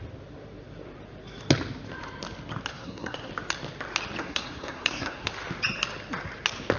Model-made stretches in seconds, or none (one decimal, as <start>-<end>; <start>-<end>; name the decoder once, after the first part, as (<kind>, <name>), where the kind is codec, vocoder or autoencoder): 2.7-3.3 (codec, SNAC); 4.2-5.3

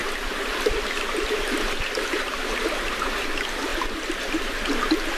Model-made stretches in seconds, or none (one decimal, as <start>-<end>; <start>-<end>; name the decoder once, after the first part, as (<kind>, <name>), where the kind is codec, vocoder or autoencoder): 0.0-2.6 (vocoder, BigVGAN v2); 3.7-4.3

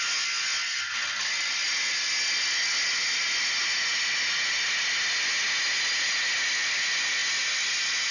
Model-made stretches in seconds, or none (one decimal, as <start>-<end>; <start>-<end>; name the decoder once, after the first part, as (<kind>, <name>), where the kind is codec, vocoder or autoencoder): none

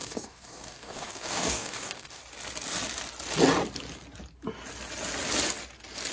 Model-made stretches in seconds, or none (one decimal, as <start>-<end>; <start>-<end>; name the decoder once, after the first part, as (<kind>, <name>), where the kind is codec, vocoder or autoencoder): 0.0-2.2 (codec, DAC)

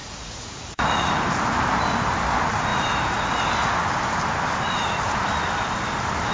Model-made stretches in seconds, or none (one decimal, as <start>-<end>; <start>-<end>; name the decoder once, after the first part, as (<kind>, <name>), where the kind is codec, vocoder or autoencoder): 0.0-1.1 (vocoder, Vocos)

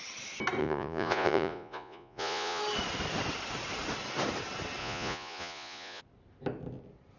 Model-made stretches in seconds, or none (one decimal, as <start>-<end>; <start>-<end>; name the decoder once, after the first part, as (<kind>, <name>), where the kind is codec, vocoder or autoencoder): 0.6-2.6 (vocoder, Vocos); 4.8-6.0

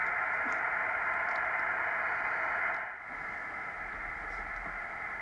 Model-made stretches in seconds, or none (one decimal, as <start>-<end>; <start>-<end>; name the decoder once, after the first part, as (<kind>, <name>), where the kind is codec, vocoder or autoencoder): none

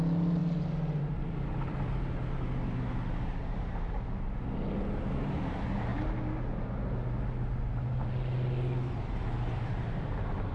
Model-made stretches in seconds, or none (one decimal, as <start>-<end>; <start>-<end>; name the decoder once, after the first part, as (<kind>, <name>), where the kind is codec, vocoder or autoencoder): none